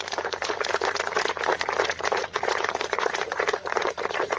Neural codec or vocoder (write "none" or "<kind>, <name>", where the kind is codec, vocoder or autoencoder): vocoder, Vocos